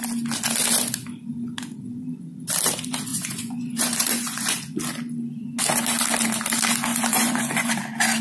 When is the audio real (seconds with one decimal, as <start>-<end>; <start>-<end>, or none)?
0.0-3.1; 4.8-6.9; 7.7-8.2